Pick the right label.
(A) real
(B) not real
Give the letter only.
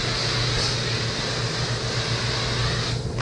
A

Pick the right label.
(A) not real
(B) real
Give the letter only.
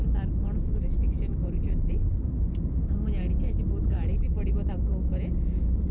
B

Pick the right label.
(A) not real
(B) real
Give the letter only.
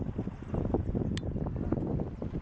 B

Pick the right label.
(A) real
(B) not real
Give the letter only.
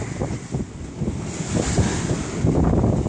A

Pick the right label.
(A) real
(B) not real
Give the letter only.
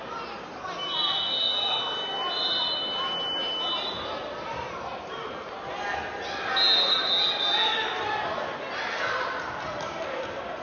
A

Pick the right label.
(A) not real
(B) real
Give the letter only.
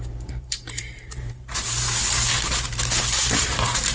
A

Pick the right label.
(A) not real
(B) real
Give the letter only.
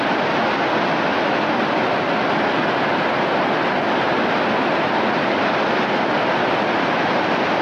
B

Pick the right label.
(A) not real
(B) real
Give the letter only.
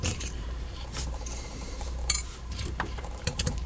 A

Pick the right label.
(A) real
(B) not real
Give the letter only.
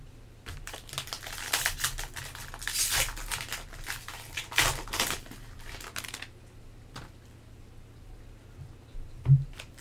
A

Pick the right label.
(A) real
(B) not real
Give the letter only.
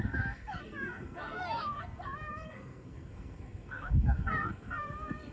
B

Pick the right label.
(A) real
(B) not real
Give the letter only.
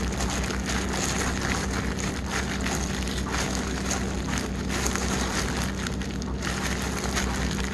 A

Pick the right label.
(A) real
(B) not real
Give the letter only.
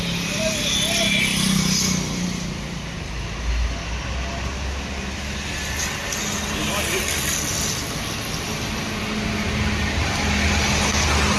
A